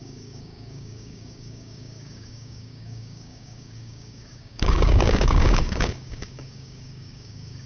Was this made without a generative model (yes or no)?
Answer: no